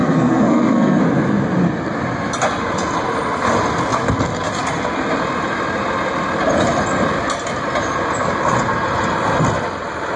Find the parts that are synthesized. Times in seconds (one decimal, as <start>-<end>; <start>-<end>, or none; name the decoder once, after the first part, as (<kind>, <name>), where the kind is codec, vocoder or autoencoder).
0.0-1.0 (codec, SNAC)